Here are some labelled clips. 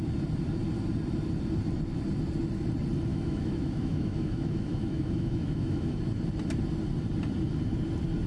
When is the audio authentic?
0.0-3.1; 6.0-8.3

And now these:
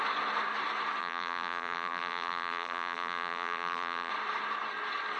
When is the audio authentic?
0.0-1.0; 4.1-5.2

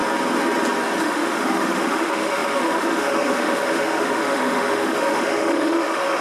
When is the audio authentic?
0.0-1.0